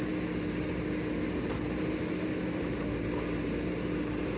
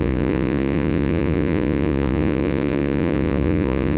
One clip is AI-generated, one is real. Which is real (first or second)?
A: first